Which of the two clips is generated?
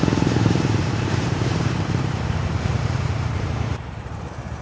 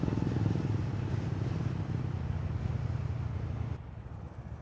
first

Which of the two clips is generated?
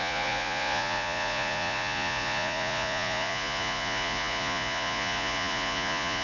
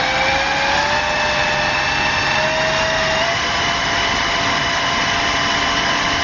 first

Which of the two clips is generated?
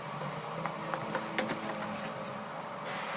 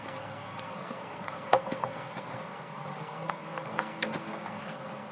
second